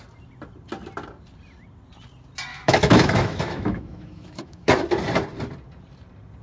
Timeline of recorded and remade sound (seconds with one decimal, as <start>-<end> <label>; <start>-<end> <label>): 0.0-2.5 recorded; 2.5-4.8 remade; 4.8-6.4 recorded